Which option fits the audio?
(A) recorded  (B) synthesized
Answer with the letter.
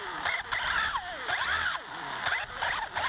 A